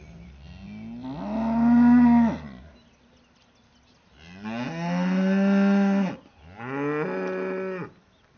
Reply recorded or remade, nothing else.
recorded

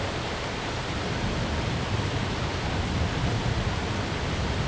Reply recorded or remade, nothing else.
recorded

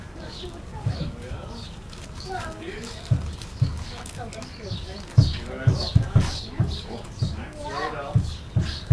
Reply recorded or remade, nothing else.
remade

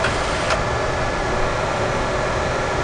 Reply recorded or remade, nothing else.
recorded